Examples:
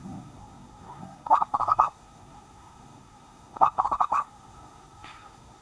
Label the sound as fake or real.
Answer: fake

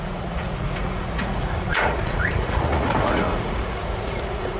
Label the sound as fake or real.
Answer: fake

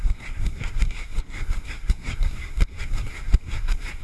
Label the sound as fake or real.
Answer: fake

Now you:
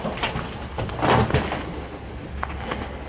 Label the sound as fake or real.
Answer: real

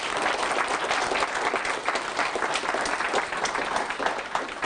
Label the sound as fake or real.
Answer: real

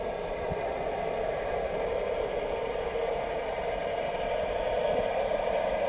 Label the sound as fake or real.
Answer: real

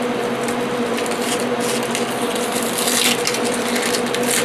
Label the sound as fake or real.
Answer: real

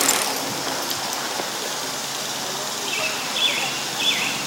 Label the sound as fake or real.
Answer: real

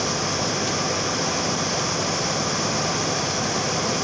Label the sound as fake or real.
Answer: real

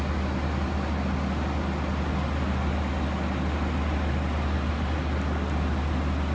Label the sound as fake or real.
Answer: real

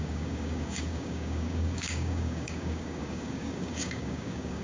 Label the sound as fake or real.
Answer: fake